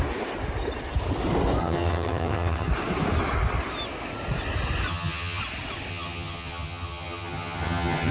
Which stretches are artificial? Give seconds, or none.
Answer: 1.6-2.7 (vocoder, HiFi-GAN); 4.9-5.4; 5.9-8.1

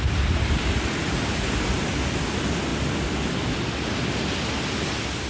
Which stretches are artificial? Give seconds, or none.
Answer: none

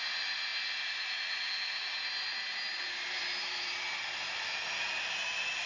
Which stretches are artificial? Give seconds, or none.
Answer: none